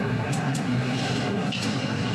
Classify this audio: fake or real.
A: fake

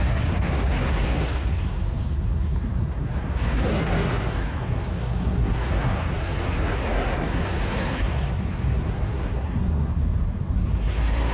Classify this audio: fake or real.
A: fake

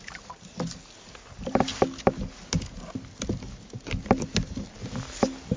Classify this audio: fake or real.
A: real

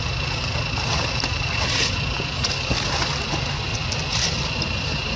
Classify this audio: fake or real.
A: real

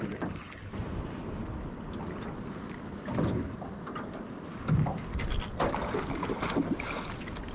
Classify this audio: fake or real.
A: real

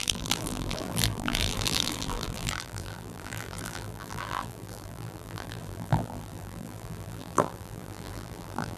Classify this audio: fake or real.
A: fake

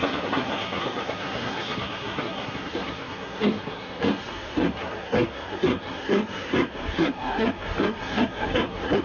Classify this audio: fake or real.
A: fake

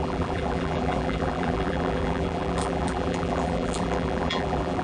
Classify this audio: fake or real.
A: fake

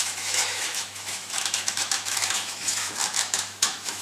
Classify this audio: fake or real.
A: fake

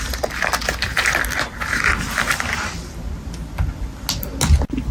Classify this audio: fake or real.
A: real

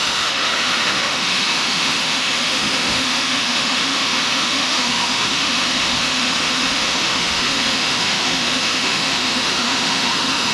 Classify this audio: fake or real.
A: fake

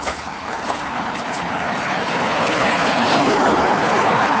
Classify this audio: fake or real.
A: fake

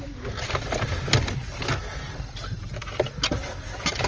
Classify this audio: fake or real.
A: real